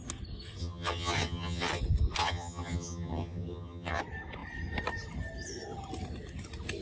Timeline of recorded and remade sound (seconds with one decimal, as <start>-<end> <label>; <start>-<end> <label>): 0.0-0.6 recorded; 0.6-1.8 remade; 1.8-2.2 recorded; 2.2-4.0 remade; 4.0-6.8 recorded